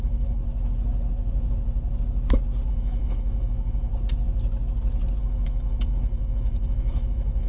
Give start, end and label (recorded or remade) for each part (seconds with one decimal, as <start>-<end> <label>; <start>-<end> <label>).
0.0-0.4 remade; 0.4-2.7 recorded; 2.7-3.9 remade; 3.9-5.2 recorded; 5.2-7.5 remade